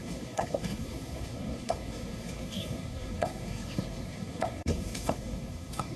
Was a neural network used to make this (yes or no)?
yes